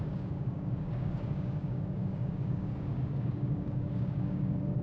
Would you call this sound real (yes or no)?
no